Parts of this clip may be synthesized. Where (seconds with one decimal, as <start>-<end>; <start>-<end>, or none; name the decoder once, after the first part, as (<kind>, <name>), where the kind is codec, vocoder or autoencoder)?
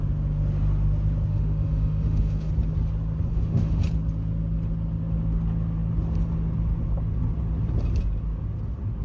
1.3-2.5 (autoencoder, DAC-VAE); 3.3-3.8